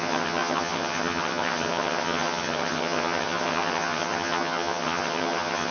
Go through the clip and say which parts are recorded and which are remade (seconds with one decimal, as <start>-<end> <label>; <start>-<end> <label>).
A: 0.0-5.7 remade